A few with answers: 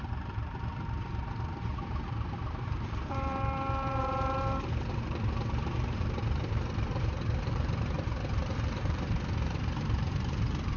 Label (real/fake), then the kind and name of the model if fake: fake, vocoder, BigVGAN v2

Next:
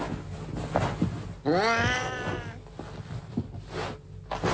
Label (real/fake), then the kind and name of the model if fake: real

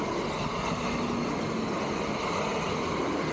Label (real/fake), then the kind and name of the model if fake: real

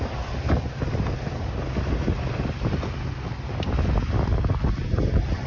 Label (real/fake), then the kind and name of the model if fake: real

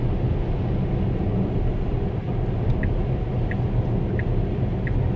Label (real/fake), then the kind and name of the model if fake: real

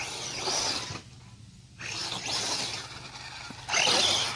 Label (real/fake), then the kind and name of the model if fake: real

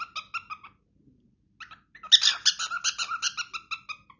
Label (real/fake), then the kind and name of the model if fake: real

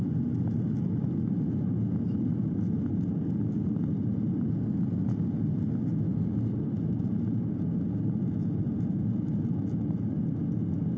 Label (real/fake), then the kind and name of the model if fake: real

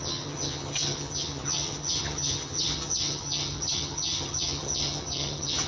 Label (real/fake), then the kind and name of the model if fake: fake, vocoder, HiFi-GAN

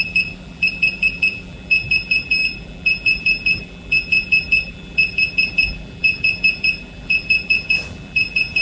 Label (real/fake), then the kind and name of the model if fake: fake, vocoder, BigVGAN v2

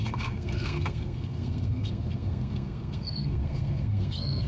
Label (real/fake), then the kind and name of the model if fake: fake, codec, SNAC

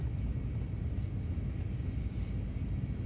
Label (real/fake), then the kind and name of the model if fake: real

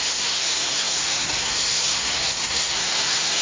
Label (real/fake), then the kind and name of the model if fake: fake, codec, SNAC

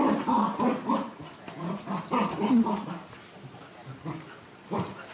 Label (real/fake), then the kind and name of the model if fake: real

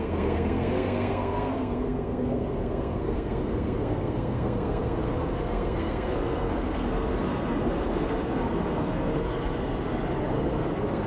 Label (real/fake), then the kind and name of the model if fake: fake, codec, SNAC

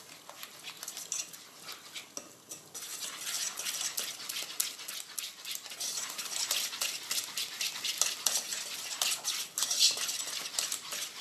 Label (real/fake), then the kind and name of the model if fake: real